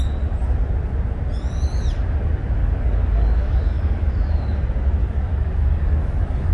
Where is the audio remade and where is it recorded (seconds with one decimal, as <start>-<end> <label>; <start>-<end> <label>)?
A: 0.0-2.6 recorded; 2.6-4.1 remade; 4.1-5.0 recorded; 5.0-6.5 remade